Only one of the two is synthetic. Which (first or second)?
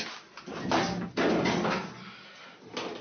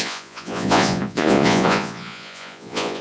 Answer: second